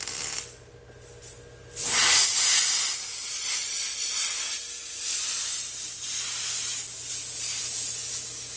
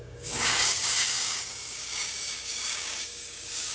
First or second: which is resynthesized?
second